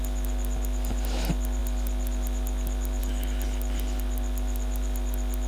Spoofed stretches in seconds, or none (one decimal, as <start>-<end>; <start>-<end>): none